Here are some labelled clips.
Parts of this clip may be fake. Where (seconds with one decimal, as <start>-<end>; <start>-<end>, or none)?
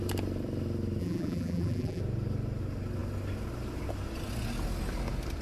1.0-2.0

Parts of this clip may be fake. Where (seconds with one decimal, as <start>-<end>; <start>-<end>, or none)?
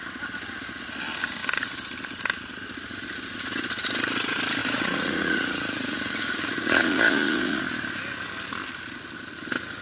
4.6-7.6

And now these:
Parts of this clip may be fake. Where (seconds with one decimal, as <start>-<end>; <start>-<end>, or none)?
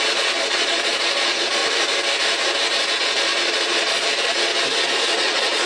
0.0-1.6; 2.9-4.5; 5.0-5.7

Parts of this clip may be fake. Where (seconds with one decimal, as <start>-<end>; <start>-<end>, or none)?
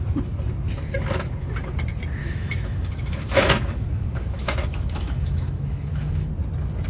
2.2-6.3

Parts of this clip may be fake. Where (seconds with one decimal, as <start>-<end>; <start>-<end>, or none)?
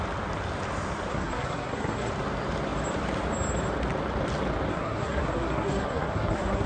1.1-2.1; 4.7-6.7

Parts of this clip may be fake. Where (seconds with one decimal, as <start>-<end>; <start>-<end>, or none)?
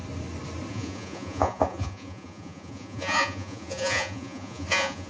0.7-5.1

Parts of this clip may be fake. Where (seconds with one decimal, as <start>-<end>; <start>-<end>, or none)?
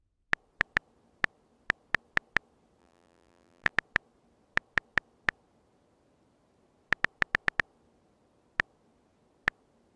2.8-3.7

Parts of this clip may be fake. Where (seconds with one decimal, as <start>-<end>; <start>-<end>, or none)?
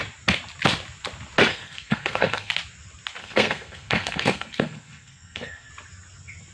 1.5-2.5; 3.2-5.7